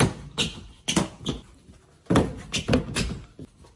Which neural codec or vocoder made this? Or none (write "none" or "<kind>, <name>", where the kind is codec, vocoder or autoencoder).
none